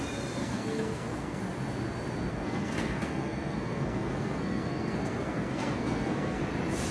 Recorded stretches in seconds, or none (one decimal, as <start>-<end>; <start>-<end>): 0.0-0.4; 1.4-2.3; 6.4-6.9